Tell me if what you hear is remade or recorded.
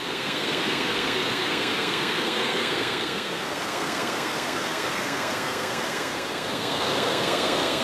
remade